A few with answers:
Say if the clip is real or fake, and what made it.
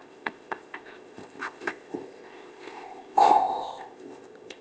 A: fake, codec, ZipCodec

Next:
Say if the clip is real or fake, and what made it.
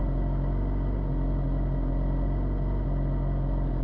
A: real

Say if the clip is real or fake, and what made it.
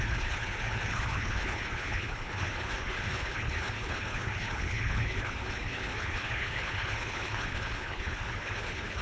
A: fake, codec, HILCodec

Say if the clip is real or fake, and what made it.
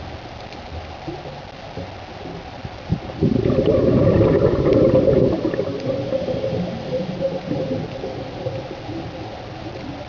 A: real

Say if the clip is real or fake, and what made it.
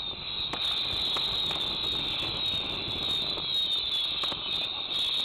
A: real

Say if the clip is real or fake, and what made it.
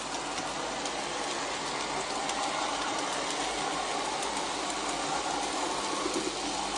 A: real